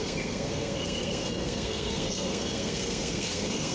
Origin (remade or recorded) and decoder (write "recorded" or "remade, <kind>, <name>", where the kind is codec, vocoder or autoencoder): remade, codec, SNAC